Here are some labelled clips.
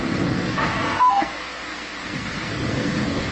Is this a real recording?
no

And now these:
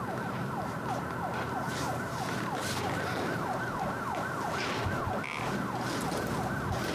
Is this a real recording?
yes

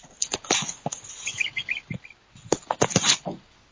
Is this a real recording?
yes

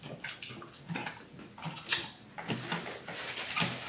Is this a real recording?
yes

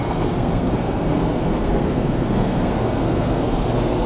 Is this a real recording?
no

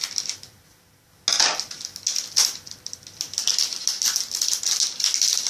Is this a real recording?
yes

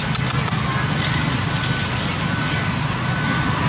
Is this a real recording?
yes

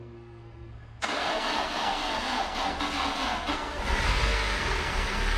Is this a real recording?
no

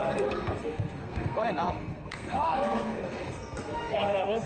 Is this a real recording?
no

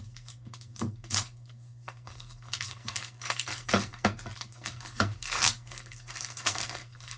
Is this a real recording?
no